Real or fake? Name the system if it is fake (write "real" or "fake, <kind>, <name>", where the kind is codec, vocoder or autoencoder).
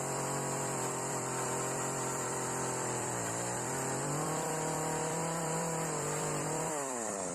fake, vocoder, BigVGAN v2